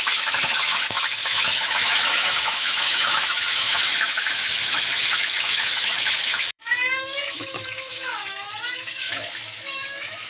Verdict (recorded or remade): remade